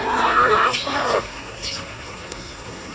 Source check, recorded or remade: remade